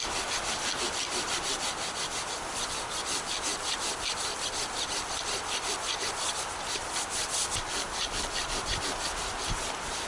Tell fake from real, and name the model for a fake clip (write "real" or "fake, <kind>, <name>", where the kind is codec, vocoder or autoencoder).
real